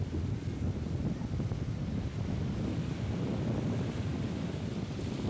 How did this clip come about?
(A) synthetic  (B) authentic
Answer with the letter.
B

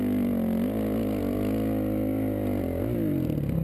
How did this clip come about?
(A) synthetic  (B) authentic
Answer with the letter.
B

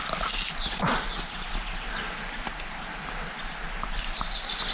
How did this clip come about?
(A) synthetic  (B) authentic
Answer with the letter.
B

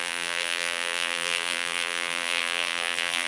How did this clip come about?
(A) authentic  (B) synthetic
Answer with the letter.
B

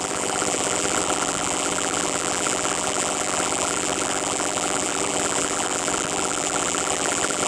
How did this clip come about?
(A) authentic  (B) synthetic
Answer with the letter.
B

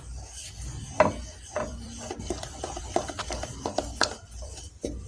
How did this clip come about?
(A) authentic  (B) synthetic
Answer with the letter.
B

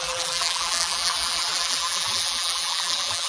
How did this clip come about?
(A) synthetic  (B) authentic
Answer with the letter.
A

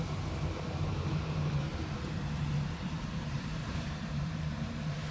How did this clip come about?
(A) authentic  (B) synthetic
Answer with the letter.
B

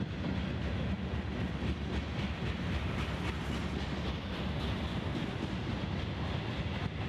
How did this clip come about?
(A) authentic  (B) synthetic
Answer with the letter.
A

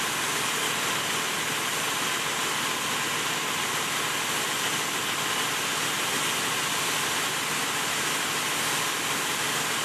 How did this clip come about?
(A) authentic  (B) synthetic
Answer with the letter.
A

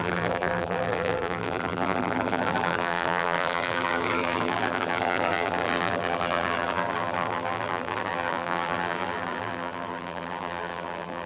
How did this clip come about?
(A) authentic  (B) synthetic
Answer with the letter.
B